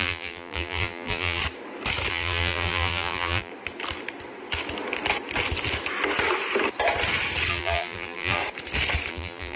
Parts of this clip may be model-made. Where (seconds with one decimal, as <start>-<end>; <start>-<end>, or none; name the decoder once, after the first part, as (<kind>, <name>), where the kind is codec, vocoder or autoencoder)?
0.0-1.4 (vocoder, BigVGAN v2); 2.1-3.5; 7.5-8.4; 9.1-9.6